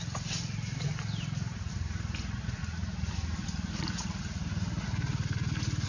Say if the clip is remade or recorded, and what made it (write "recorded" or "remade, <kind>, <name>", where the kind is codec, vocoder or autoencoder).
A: recorded